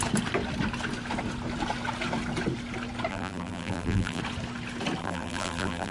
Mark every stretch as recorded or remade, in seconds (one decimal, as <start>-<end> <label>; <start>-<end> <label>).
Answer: 0.0-3.1 recorded; 3.1-4.2 remade; 4.2-5.0 recorded; 5.0-5.9 remade